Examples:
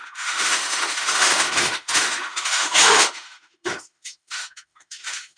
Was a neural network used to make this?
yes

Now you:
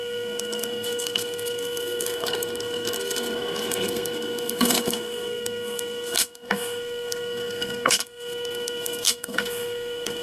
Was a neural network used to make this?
yes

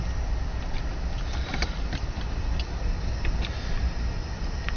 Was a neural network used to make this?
yes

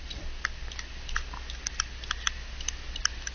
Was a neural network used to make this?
no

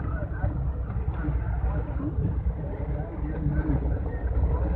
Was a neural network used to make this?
no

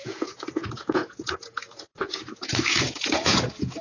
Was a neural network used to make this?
yes